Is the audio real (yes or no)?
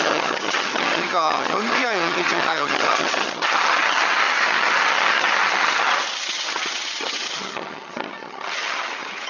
no